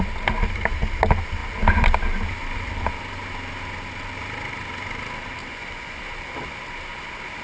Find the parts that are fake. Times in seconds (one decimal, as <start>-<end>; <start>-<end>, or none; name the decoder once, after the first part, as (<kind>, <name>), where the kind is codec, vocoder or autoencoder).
5.4-6.0 (vocoder, Vocos)